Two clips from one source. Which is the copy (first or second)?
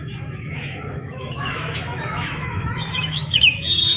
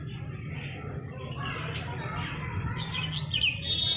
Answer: first